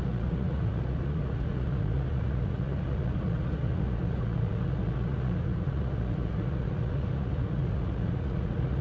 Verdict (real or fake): fake